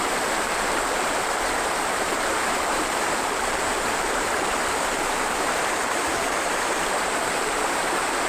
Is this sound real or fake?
fake